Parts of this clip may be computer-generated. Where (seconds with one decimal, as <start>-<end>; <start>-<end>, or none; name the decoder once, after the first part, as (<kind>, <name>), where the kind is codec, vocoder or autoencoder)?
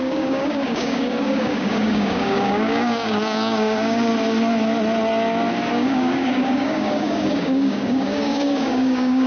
0.0-4.1 (codec, DAC); 5.7-9.3